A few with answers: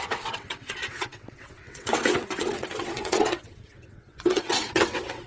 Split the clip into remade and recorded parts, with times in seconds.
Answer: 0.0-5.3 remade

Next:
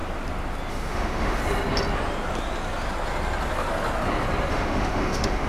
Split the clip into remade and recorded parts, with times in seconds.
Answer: 0.0-0.7 recorded; 0.7-1.4 remade; 1.4-4.5 recorded; 4.5-5.5 remade

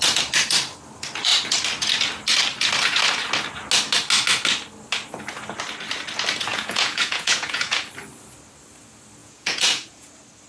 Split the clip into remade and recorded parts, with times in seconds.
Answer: 0.0-6.5 recorded; 6.5-7.8 remade; 7.8-9.2 recorded; 9.2-10.1 remade; 10.1-10.5 recorded

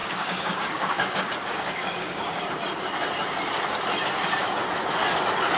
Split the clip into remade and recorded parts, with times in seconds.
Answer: 0.0-2.4 remade; 2.4-5.6 recorded

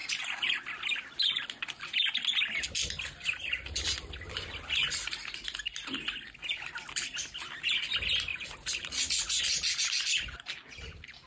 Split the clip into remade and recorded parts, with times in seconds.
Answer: 0.0-8.3 recorded; 8.3-9.4 remade; 9.4-11.3 recorded

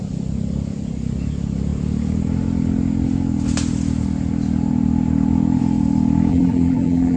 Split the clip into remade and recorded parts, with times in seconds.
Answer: 0.0-6.3 recorded; 6.3-7.2 remade

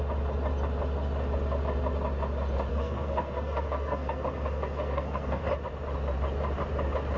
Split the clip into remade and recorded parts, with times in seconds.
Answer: 0.0-2.7 recorded; 2.7-5.4 remade; 5.4-7.2 recorded